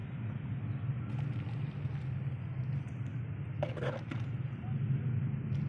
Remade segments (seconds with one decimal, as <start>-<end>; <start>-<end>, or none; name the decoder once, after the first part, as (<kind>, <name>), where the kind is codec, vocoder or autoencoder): none

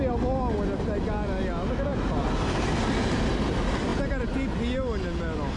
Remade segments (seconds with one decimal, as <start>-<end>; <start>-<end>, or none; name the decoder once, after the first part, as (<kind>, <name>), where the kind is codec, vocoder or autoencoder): none